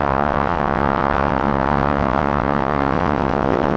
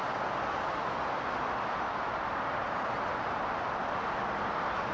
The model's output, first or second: first